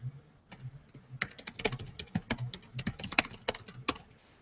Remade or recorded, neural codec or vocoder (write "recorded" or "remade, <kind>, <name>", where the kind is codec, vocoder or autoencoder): recorded